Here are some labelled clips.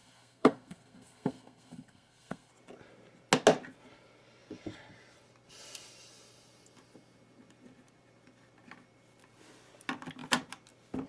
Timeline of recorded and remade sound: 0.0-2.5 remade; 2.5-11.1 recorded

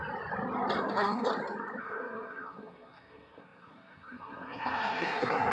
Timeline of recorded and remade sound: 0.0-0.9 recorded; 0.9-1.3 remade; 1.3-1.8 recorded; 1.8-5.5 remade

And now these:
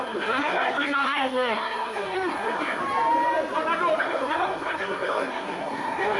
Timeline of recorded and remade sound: 0.0-2.8 remade; 2.8-4.0 recorded; 4.0-6.2 remade

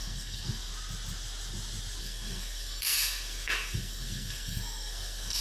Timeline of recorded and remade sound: 0.0-0.7 remade; 0.7-2.0 recorded; 2.0-5.4 remade